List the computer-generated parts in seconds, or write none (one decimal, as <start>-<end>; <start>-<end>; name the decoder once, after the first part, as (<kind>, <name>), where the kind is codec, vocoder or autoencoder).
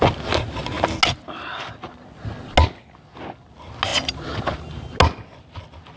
none